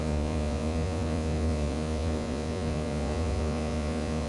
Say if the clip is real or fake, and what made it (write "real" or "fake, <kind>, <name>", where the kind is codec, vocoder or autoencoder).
fake, vocoder, Vocos